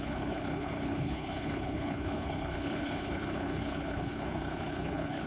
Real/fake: fake